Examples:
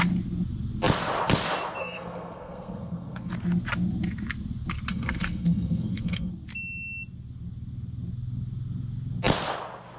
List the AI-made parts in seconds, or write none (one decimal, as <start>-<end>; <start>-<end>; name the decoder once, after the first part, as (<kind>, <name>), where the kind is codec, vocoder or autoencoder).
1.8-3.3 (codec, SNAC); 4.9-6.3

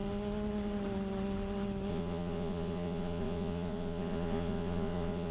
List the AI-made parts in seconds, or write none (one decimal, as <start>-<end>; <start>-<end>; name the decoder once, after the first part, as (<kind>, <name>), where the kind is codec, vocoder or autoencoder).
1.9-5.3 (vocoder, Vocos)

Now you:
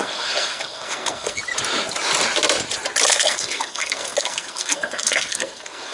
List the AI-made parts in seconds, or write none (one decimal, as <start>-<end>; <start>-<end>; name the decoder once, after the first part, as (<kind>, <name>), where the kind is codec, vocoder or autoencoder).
0.0-1.4 (codec, SNAC); 3.1-5.9

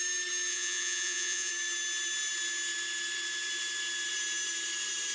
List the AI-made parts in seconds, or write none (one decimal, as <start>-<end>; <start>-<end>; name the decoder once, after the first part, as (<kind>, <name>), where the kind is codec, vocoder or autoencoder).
0.5-1.5 (vocoder, Vocos)